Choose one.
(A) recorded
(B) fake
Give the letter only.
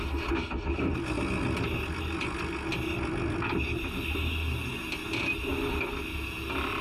A